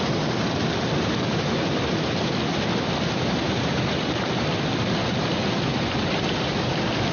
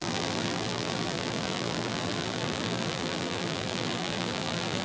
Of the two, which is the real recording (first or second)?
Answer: first